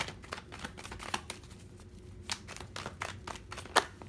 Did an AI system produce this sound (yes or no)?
no